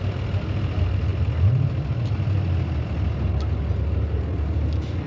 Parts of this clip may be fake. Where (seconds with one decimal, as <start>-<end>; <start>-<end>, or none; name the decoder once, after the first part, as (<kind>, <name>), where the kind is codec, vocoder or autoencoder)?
none